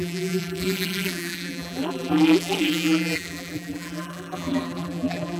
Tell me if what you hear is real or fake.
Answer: fake